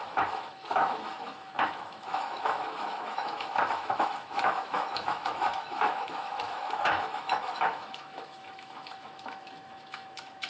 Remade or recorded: remade